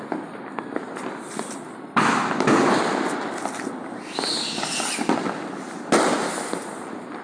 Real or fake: real